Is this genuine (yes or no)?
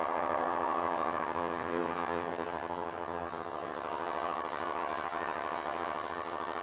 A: no